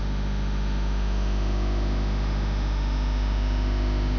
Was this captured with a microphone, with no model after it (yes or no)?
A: no